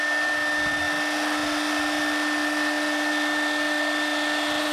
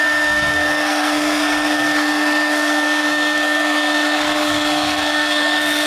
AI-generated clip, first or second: second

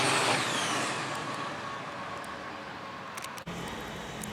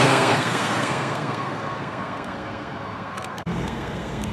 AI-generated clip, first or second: second